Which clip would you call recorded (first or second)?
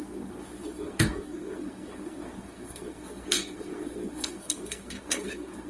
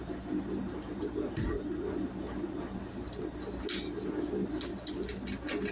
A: second